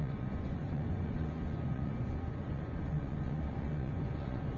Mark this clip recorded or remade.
remade